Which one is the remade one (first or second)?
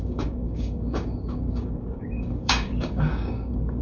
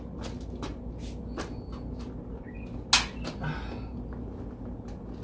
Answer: first